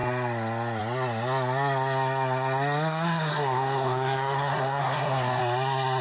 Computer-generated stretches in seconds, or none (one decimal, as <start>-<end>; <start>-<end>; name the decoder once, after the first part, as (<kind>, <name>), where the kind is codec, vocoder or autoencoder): 2.9-5.4 (codec, SNAC)